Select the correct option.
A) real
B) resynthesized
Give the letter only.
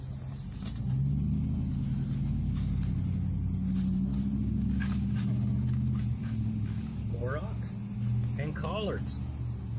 A